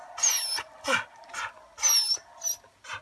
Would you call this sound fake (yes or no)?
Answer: no